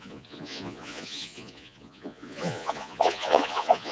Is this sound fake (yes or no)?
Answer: yes